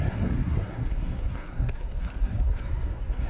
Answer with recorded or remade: remade